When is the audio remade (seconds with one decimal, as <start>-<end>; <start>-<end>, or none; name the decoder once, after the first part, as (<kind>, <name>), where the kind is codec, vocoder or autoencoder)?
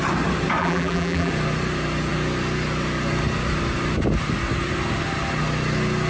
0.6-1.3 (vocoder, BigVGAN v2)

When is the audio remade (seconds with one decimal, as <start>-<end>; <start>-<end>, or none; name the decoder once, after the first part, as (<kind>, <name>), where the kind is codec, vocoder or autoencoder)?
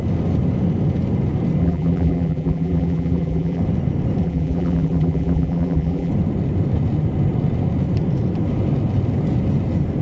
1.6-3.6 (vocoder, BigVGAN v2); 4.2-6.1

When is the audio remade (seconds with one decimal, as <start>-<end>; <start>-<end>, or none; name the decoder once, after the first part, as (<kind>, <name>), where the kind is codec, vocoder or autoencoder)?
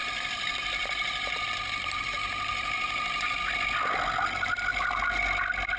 0.0-3.5 (vocoder, BigVGAN v2)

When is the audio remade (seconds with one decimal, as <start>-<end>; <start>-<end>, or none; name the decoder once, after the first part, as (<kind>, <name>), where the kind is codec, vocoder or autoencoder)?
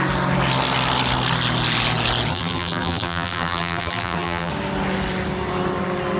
2.3-4.5 (vocoder, BigVGAN v2)